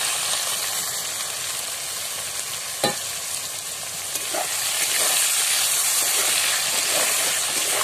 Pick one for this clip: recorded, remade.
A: recorded